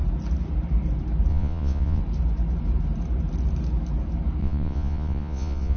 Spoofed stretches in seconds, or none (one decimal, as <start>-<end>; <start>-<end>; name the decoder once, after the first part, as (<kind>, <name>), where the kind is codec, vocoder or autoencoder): 1.3-2.0 (vocoder, Vocos); 4.4-5.8